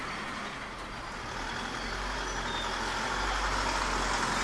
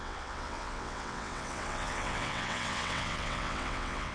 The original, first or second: first